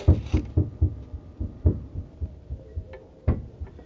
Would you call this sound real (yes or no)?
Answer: yes